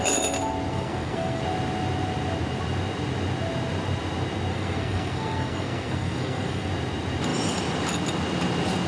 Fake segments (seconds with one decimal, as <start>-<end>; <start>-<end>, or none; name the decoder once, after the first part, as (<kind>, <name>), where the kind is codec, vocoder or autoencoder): 0.7-1.4 (codec, SNAC); 4.5-6.7

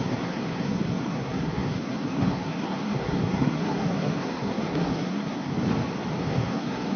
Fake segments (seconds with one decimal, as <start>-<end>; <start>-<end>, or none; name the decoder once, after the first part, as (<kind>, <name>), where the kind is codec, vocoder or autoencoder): 0.0-5.5 (codec, SNAC); 6.2-7.0

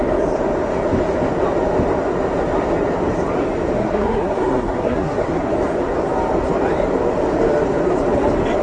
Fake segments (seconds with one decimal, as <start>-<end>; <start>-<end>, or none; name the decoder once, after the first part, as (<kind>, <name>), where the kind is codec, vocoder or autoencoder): 3.8-5.5 (codec, SNAC)

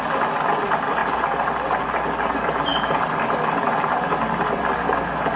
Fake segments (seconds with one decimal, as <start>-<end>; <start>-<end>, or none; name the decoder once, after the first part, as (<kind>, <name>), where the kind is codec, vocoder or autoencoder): none